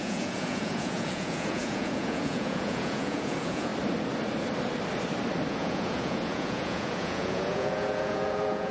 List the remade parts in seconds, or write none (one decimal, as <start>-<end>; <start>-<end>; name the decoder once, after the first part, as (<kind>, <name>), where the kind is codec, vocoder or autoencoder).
0.0-3.7 (vocoder, Vocos); 5.5-8.7